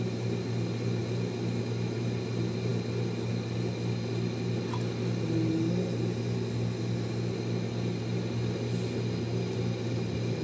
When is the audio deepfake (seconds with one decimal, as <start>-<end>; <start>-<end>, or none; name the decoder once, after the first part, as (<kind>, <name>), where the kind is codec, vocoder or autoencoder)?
none